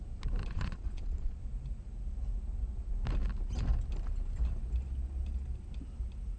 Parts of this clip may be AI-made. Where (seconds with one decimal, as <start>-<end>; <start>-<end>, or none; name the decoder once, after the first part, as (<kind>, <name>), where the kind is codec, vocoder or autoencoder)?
0.4-1.4 (vocoder, Vocos)